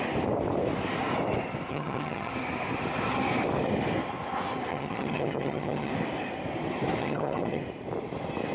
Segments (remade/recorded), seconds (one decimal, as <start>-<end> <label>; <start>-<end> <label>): 0.0-1.7 recorded; 1.7-2.3 remade; 2.3-4.7 recorded; 4.7-5.9 remade; 5.9-7.0 recorded; 7.0-7.6 remade; 7.6-8.5 recorded